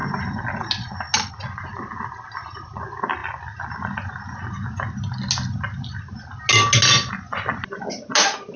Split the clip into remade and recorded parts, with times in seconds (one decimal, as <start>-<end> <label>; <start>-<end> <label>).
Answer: 0.0-8.6 recorded